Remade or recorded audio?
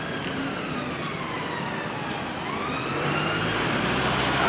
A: recorded